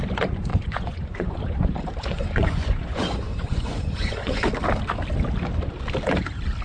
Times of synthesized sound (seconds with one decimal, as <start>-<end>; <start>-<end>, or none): 0.5-4.5